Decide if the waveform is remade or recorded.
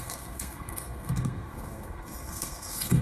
remade